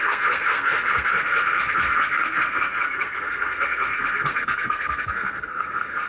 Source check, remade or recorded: remade